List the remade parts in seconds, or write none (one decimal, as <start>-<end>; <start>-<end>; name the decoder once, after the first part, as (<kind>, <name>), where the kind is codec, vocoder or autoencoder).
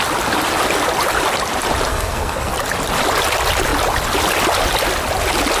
1.9-2.5 (codec, SNAC)